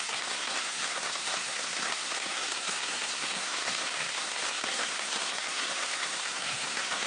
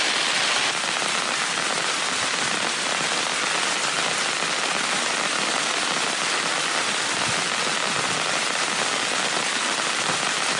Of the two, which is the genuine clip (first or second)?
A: second